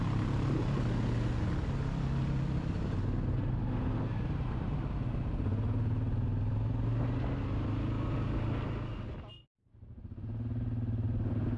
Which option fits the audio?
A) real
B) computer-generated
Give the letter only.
A